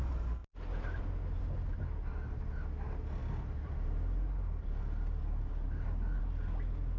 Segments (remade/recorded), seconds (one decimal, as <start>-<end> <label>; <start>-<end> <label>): 0.0-0.4 recorded; 0.4-1.1 remade; 1.1-3.2 recorded; 3.2-6.2 remade; 6.2-7.0 recorded